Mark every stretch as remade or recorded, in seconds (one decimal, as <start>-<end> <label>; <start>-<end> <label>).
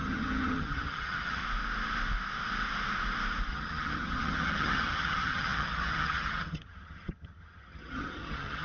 0.0-1.4 remade; 1.4-3.5 recorded; 3.5-8.6 remade